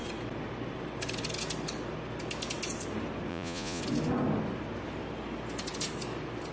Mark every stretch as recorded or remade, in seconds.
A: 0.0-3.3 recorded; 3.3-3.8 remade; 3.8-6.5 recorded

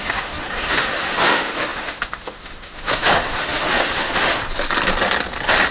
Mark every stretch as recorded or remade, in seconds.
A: 0.0-4.4 remade; 4.4-5.7 recorded

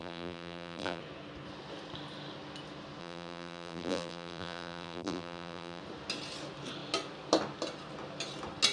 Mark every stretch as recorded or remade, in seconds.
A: 0.0-1.0 remade; 1.0-3.0 recorded; 3.0-5.8 remade; 5.8-8.7 recorded

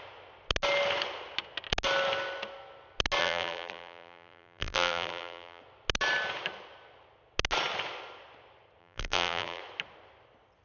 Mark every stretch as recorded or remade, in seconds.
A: 0.0-3.2 recorded; 3.2-5.6 remade; 5.6-8.8 recorded; 8.8-9.6 remade; 9.6-10.6 recorded

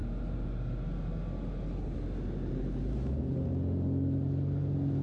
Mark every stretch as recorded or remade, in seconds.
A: 0.0-5.0 recorded